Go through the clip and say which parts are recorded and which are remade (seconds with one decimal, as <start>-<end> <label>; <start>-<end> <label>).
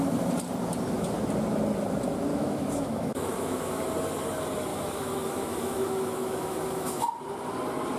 0.0-2.3 recorded; 2.3-3.8 remade; 3.8-4.7 recorded; 4.7-7.0 remade; 7.0-8.0 recorded